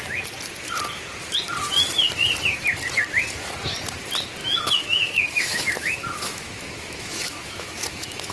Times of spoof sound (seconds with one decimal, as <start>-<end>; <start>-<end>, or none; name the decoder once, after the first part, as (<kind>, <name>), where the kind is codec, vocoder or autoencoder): 4.4-8.3 (autoencoder, DAC-VAE)